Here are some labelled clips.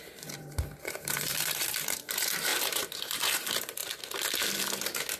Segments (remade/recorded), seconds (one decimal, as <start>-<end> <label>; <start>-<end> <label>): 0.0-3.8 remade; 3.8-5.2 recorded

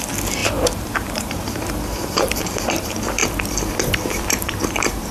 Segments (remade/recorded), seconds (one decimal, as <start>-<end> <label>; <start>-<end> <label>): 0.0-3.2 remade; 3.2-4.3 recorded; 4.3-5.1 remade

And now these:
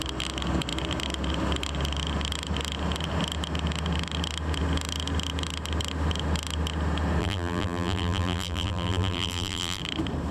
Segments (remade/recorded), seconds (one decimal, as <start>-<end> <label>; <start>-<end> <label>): 0.0-7.2 recorded; 7.2-9.8 remade; 9.8-10.3 recorded

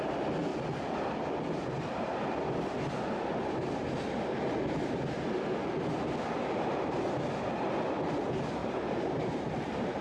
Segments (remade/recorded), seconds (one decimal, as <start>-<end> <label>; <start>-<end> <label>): 0.0-8.6 recorded; 8.6-10.0 remade

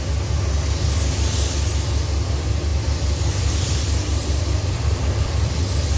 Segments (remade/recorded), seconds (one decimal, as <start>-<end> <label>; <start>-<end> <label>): 0.0-4.2 recorded; 4.2-5.6 remade; 5.6-6.0 recorded

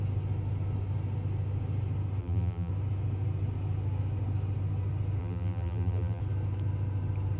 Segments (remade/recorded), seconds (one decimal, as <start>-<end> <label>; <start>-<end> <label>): 0.0-2.2 recorded; 2.2-2.7 remade; 2.7-5.2 recorded; 5.2-6.2 remade; 6.2-7.4 recorded

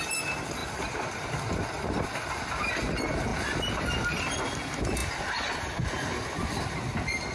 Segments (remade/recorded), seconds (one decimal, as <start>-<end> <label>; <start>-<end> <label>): 0.0-0.6 recorded; 0.6-2.2 remade; 2.2-3.3 recorded; 3.3-3.8 remade; 3.8-7.3 recorded